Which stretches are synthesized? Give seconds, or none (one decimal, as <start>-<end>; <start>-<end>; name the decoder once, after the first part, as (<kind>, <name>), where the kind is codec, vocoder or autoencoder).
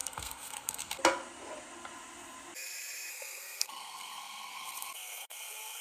0.0-1.0 (codec, SNAC); 3.1-5.8